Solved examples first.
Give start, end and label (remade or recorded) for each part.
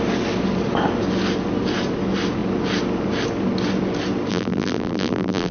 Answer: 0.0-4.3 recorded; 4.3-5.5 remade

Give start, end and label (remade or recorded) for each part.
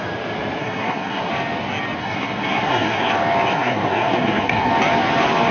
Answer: 0.0-0.6 recorded; 0.6-1.3 remade; 1.3-2.0 recorded; 2.0-3.1 remade; 3.1-3.5 recorded; 3.5-4.7 remade; 4.7-5.5 recorded